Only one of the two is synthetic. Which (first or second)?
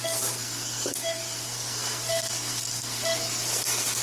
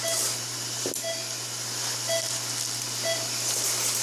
first